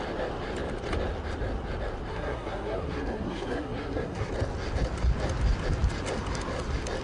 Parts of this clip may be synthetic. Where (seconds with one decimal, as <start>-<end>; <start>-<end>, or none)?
2.1-4.3